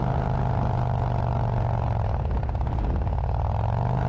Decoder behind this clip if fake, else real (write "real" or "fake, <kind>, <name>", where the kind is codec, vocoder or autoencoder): real